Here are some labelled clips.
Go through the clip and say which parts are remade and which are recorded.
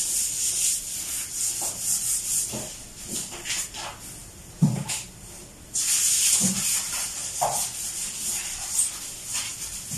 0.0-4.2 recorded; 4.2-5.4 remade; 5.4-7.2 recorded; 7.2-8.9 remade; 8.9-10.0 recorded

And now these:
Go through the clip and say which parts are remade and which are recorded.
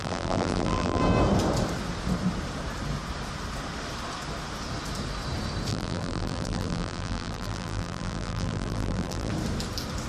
0.0-1.0 remade; 1.0-5.7 recorded; 5.7-9.3 remade; 9.3-10.1 recorded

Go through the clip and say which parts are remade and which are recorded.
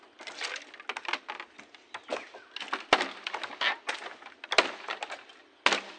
0.0-6.0 recorded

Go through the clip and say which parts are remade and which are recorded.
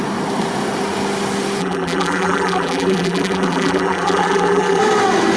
0.0-1.6 recorded; 1.6-4.8 remade; 4.8-5.4 recorded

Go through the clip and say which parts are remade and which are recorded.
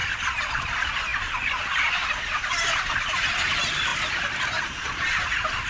0.0-5.7 recorded